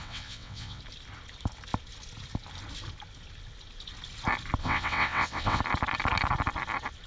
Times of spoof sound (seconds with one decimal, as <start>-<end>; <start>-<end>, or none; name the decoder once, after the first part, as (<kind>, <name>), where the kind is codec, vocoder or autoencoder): 0.0-0.8 (vocoder, WaveNeXt); 4.6-5.6